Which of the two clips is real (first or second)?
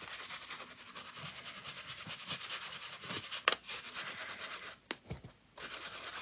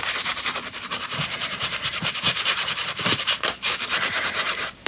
first